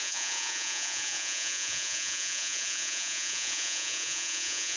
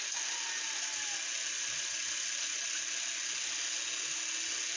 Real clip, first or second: second